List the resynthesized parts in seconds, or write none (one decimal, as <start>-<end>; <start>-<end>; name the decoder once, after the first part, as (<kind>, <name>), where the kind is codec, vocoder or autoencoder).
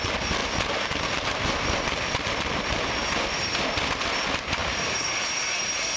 4.6-5.6 (vocoder, BigVGAN v2)